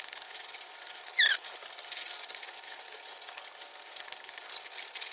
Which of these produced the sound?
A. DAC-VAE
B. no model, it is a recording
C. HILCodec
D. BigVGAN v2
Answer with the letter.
B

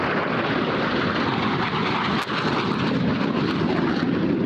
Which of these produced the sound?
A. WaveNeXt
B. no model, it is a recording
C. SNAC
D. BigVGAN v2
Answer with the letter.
B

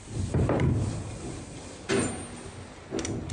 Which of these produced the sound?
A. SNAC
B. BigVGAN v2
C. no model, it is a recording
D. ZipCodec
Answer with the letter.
C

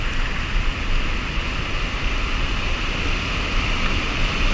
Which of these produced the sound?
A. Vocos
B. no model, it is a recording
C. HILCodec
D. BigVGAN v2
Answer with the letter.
B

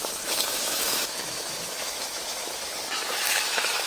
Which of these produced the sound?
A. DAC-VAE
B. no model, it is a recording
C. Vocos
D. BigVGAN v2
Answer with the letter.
A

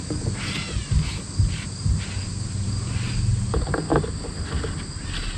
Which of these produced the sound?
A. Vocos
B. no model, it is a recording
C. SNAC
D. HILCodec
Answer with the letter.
B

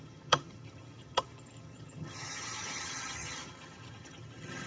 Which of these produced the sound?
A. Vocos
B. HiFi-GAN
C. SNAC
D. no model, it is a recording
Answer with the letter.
B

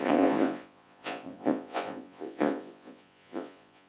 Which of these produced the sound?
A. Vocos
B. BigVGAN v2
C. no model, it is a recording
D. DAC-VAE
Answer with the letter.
A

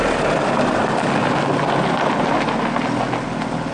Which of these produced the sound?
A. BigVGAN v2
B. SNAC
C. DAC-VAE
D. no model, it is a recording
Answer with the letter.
D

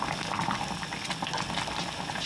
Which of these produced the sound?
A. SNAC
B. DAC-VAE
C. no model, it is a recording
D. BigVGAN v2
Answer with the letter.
C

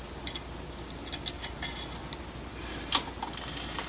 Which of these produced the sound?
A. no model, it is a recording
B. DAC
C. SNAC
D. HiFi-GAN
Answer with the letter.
A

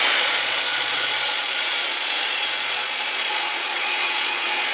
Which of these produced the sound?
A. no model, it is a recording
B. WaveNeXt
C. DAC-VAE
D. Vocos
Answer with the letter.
D